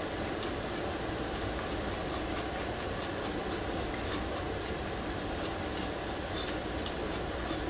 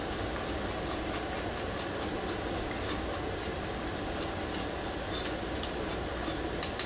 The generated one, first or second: first